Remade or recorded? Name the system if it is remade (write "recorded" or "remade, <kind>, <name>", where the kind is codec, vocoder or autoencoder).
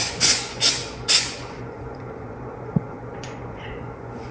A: remade, vocoder, Vocos